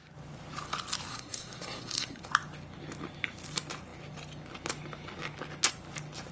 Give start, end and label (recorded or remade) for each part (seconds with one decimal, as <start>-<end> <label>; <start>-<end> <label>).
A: 0.0-1.1 recorded; 1.1-2.2 remade; 2.2-6.3 recorded